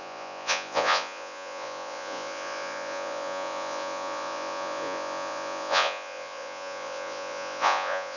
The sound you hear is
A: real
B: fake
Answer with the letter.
B